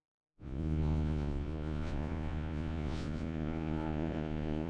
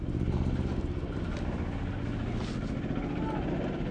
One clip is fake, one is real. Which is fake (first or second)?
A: first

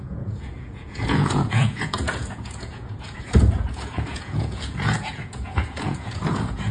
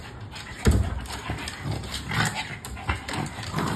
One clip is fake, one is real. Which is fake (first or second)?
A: first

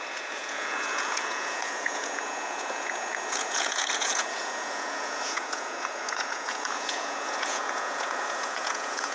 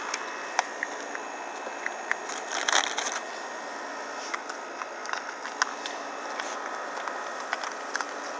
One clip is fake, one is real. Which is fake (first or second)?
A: first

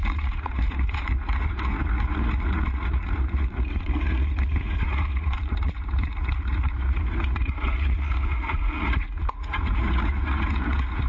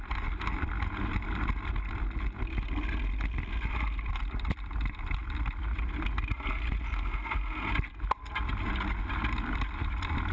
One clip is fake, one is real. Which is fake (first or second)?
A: first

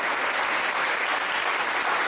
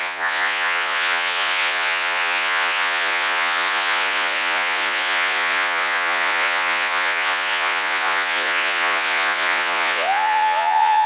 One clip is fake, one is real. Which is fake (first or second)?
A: second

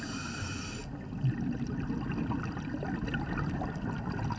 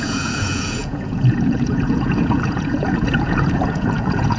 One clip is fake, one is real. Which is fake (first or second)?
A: second